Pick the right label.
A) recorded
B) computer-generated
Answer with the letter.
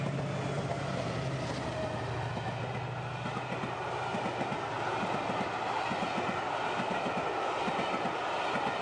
A